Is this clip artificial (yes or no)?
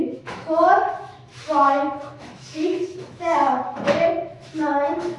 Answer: yes